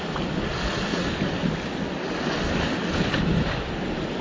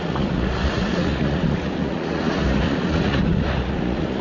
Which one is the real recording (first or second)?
first